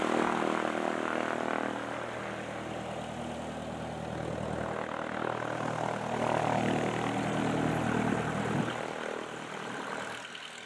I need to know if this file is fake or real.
real